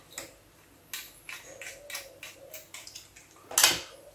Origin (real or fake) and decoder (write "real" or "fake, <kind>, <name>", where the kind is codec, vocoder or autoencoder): real